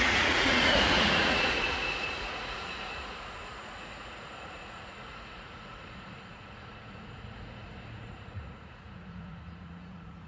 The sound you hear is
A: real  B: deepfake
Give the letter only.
B